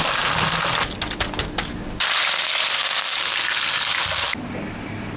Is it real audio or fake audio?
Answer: real